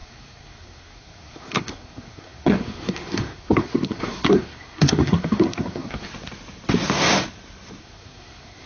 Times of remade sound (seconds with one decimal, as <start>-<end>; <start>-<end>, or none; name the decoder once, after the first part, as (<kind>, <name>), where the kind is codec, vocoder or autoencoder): 0.0-6.1 (codec, SNAC); 7.8-8.7